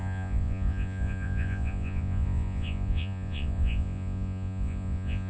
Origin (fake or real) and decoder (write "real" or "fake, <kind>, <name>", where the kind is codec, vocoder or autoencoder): fake, vocoder, Vocos